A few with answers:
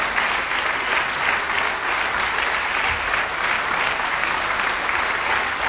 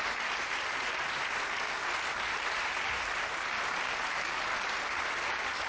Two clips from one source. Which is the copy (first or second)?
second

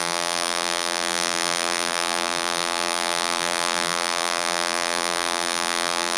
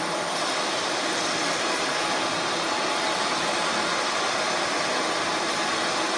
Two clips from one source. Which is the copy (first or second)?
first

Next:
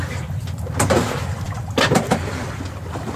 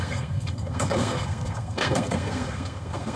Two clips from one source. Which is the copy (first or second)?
second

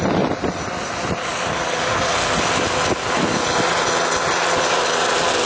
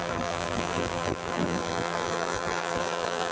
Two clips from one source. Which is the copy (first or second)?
second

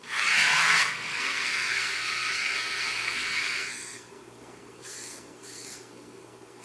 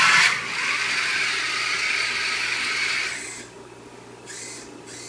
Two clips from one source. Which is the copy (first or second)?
first